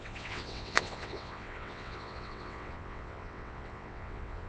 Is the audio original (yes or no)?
no